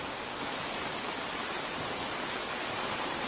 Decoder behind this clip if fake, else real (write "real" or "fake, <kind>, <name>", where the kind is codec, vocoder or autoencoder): real